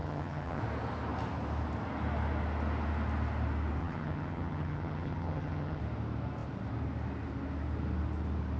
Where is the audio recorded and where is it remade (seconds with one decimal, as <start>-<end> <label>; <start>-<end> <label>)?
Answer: 0.0-0.6 remade; 0.6-3.8 recorded; 3.8-5.8 remade; 5.8-8.6 recorded